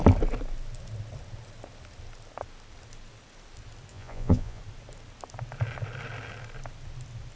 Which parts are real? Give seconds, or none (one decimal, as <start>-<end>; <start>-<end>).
0.0-3.9; 4.6-7.4